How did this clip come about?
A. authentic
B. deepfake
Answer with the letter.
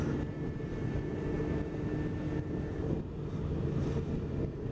A